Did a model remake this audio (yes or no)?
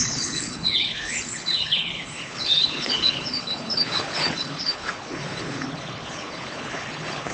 yes